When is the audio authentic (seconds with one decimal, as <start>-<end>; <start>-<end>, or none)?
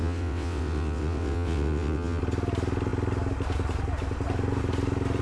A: 2.2-5.2